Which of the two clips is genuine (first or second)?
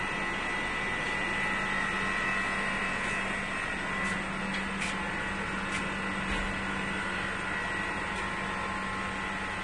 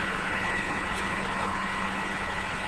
first